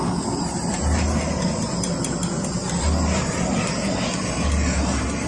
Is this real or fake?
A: real